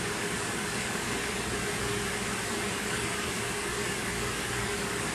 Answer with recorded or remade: remade